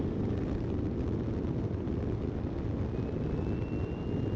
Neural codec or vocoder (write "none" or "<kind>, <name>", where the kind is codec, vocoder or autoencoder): none